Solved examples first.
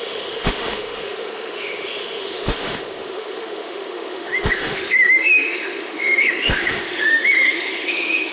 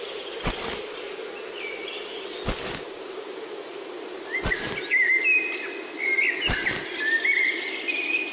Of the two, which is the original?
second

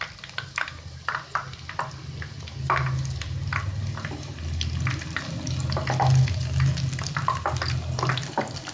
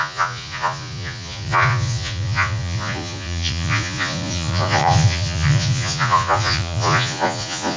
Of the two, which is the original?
first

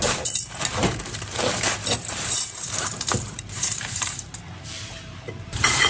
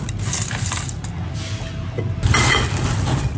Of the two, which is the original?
second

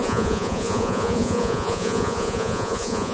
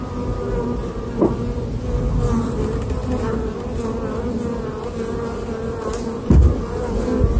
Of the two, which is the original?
second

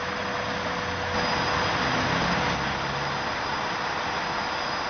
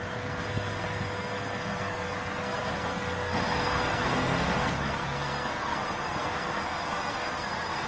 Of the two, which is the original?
first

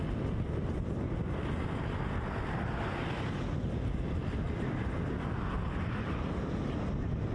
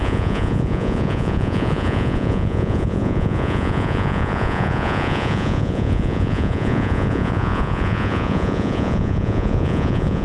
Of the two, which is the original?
first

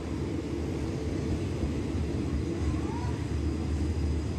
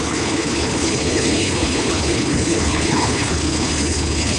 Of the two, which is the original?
first